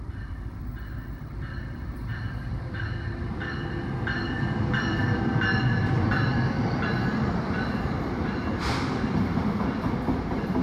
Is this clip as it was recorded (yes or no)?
no